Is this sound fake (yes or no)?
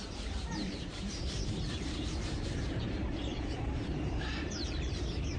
yes